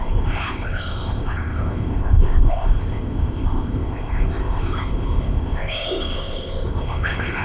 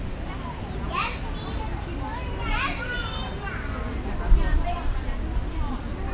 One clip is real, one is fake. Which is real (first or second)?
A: second